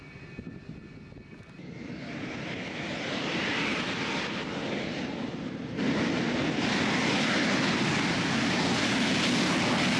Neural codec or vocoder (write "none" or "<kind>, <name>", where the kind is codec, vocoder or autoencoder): none